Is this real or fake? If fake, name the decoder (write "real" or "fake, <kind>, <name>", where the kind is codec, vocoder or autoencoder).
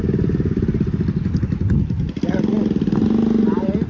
real